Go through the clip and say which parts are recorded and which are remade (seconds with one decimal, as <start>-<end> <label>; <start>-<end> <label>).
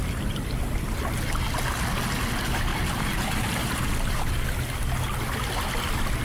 0.0-1.0 remade; 1.0-2.7 recorded; 2.7-4.3 remade; 4.3-6.2 recorded